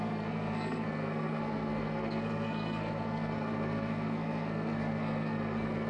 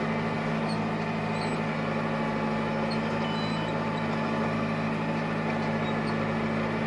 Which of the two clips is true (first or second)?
second